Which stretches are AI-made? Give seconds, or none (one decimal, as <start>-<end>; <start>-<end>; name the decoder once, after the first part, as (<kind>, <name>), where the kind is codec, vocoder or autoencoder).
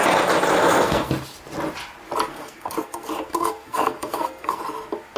0.6-1.1 (codec, SNAC); 2.3-4.6